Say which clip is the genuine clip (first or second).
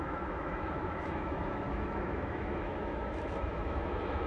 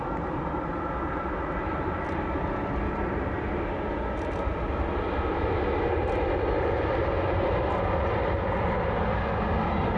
second